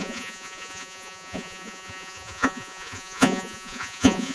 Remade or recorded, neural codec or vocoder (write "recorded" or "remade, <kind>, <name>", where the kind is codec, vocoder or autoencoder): remade, vocoder, Vocos